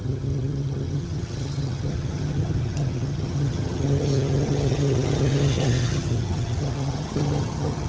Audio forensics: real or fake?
fake